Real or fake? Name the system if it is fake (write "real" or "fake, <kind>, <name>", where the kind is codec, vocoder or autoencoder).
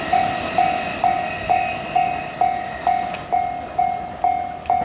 real